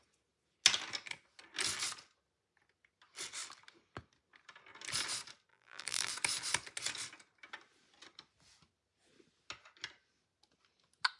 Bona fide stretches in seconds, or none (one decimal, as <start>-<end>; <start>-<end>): 0.0-5.5; 6.1-11.2